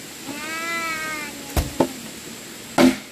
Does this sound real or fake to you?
real